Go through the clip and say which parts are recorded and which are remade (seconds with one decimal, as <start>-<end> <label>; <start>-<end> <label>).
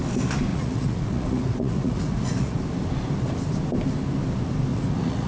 0.0-0.5 recorded; 0.5-2.6 remade; 2.6-4.7 recorded; 4.7-5.3 remade